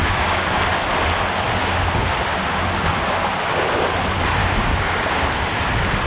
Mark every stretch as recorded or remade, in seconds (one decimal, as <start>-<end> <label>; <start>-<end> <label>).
0.0-0.6 remade; 0.6-4.4 recorded; 4.4-5.5 remade; 5.5-6.1 recorded